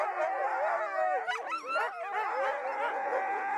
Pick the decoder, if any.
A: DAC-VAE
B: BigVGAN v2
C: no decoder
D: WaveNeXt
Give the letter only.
C